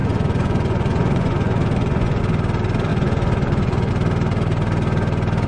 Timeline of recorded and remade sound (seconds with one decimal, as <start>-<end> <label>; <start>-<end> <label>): 0.0-2.2 remade; 2.2-2.9 recorded; 2.9-3.9 remade; 3.9-5.5 recorded